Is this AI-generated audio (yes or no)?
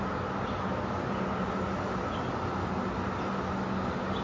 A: no